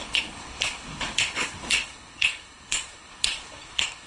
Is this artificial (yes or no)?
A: yes